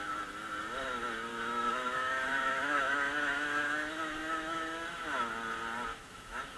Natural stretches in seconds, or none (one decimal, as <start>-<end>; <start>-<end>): 0.0-1.3; 5.3-5.9